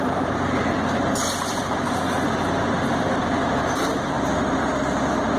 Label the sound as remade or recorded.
remade